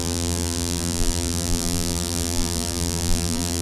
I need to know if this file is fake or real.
fake